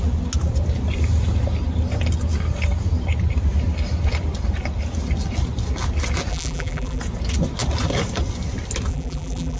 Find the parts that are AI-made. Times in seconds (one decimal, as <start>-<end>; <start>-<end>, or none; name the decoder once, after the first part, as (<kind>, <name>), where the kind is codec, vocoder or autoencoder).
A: 6.3-7.0 (vocoder, BigVGAN v2); 8.9-9.6